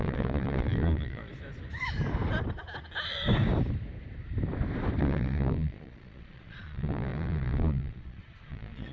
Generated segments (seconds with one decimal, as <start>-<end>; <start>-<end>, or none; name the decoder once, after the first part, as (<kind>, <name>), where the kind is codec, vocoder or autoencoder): 0.0-1.3 (vocoder, Vocos); 5.0-8.9